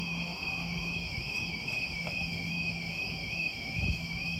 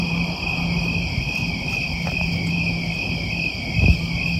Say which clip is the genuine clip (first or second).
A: second